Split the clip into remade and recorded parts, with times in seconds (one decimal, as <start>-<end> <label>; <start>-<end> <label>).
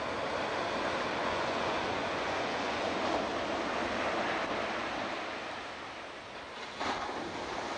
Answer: 0.0-1.2 recorded; 1.2-3.0 remade; 3.0-7.8 recorded